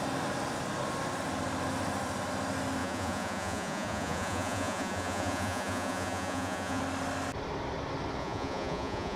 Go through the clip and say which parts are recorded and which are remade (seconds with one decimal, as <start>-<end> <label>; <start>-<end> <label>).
0.0-2.8 recorded; 2.8-6.8 remade; 6.8-8.2 recorded; 8.2-9.2 remade